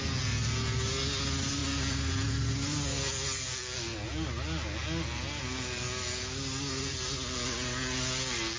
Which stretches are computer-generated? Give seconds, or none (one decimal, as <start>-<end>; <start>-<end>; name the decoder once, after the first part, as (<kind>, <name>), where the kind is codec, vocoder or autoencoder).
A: none

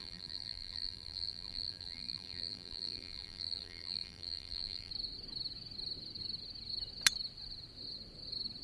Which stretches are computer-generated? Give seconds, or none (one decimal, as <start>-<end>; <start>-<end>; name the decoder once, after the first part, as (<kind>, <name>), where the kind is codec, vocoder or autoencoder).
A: 0.0-4.9 (vocoder, BigVGAN v2)

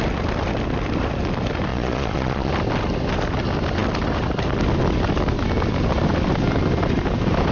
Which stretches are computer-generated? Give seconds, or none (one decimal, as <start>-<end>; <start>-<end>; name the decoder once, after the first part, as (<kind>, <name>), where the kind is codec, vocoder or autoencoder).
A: 1.7-2.5 (vocoder, Vocos)

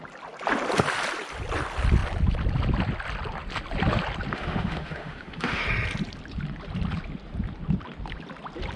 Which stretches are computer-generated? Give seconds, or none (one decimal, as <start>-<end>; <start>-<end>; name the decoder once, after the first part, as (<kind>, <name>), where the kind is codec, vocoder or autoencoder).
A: 4.3-5.6 (autoencoder, DAC-VAE)

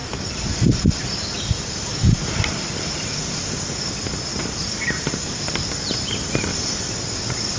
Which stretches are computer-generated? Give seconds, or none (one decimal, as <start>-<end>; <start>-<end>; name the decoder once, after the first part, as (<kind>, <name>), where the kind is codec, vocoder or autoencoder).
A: 1.9-2.5 (vocoder, BigVGAN v2); 4.3-5.4

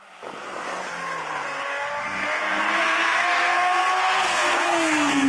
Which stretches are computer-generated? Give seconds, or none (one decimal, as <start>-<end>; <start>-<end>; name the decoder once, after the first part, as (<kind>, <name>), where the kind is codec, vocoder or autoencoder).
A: 2.0-5.3 (codec, SNAC)

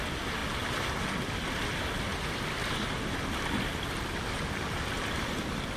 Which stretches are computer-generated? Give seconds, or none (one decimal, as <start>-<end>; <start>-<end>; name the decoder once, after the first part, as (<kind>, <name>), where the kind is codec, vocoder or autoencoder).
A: none

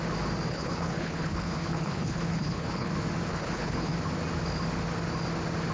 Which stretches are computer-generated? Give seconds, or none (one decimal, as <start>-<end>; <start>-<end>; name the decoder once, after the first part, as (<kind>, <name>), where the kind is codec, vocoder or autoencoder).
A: 0.5-2.9 (codec, HILCodec); 3.3-3.9